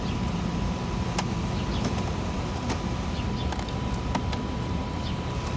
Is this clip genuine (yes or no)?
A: yes